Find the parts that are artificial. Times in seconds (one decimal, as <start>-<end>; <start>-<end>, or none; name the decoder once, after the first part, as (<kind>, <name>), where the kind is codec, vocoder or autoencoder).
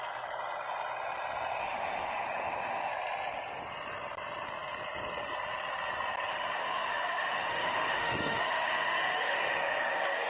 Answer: 1.6-2.9 (autoencoder, DAC-VAE); 6.3-10.3